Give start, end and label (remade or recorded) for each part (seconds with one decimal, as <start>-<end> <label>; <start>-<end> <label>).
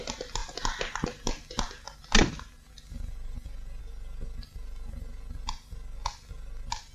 0.0-6.9 recorded